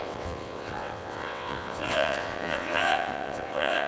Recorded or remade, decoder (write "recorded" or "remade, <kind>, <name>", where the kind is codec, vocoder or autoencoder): remade, vocoder, WaveNeXt